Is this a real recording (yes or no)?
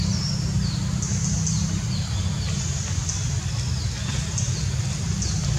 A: yes